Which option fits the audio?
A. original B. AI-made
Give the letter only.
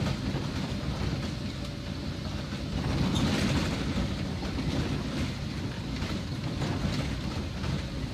A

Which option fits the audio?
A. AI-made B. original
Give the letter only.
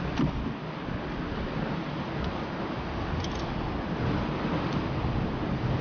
B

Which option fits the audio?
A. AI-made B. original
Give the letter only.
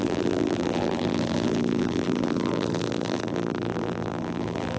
A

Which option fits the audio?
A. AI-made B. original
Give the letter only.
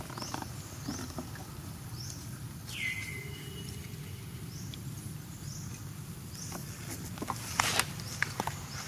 B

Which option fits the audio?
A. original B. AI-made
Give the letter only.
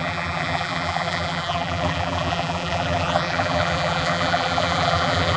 B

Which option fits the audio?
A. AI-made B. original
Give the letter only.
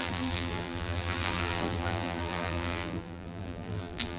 A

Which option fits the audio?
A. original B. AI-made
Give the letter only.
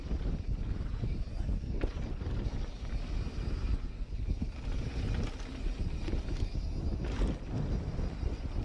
A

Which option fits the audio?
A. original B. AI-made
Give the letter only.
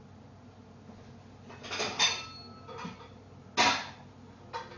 A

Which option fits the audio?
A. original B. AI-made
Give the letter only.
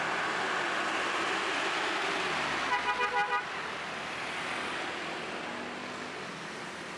A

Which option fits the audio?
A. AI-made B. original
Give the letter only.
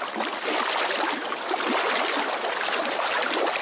B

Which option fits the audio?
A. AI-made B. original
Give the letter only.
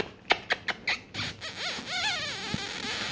B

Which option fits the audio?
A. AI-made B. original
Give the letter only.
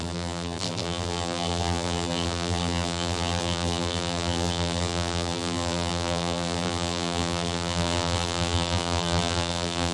A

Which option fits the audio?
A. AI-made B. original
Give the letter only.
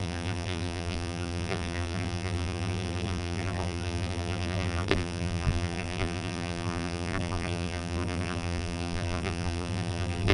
A